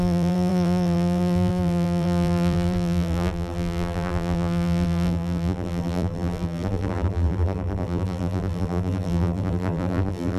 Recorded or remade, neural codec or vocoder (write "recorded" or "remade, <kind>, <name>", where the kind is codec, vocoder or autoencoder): remade, vocoder, BigVGAN v2